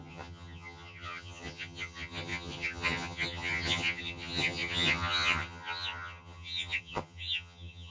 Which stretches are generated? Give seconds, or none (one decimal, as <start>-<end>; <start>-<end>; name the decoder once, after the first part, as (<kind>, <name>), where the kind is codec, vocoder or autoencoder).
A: 0.0-7.9 (vocoder, HiFi-GAN)